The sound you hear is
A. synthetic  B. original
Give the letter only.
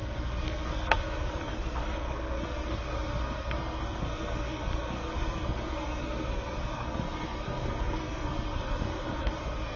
A